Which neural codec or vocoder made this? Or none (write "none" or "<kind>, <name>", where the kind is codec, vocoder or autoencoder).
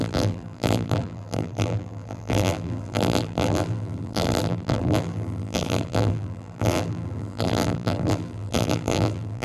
vocoder, BigVGAN v2